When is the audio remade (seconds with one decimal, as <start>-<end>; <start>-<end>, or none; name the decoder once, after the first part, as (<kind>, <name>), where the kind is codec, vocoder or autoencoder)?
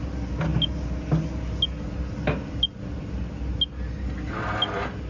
none